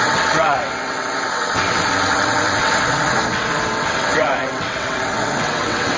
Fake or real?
fake